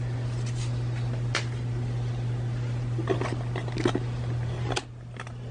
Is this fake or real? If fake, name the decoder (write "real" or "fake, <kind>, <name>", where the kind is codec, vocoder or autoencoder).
real